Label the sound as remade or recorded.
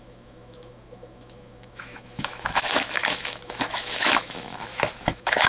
remade